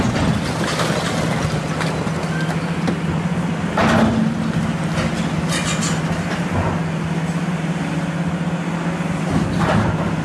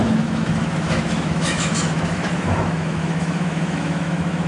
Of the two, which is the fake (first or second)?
second